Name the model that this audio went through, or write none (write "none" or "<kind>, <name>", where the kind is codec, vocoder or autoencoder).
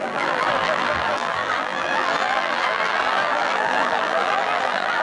vocoder, BigVGAN v2